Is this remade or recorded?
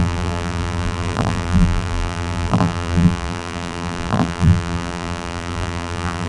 remade